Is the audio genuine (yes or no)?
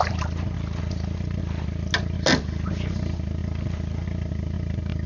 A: yes